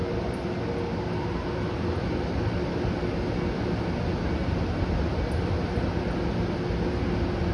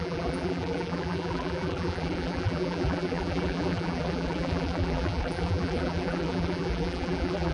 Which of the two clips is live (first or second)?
first